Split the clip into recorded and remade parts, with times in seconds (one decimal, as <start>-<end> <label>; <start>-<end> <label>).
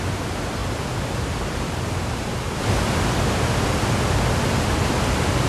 0.0-0.6 remade; 0.6-1.4 recorded; 1.4-2.3 remade; 2.3-4.9 recorded; 4.9-5.5 remade